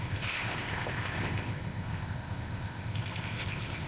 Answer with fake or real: fake